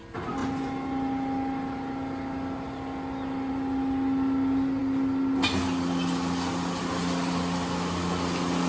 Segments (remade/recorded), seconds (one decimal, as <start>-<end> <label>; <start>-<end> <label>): 0.0-8.7 recorded